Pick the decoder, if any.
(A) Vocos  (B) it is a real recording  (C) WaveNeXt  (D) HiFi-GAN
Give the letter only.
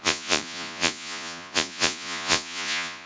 A